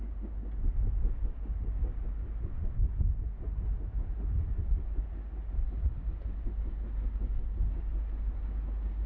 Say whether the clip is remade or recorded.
recorded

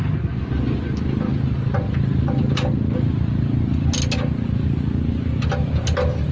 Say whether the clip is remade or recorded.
recorded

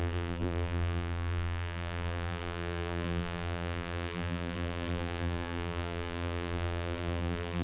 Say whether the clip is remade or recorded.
remade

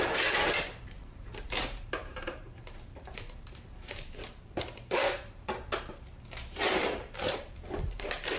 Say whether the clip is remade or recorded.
remade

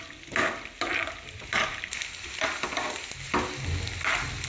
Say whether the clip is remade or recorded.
recorded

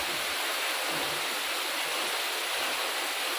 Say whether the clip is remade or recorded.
recorded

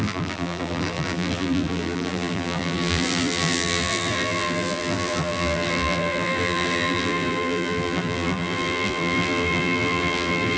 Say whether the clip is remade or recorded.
remade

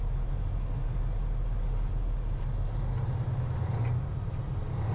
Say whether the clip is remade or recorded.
recorded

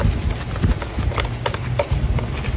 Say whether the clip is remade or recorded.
recorded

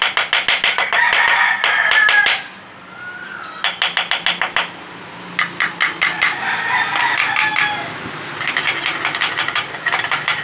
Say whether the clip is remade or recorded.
recorded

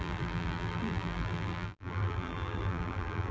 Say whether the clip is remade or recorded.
remade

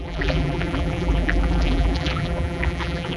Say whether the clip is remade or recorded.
remade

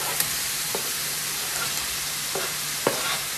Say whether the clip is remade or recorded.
remade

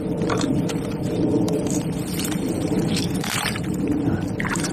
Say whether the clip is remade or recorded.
remade